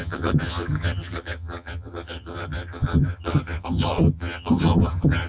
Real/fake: fake